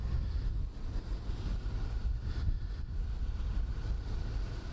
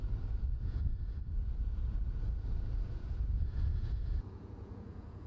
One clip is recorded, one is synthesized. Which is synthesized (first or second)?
second